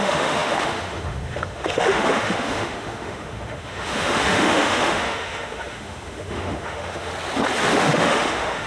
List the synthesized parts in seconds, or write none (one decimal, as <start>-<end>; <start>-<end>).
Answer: 0.0-7.1; 7.7-8.7